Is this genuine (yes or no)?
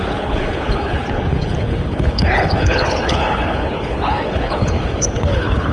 no